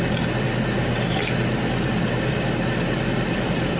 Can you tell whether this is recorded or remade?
recorded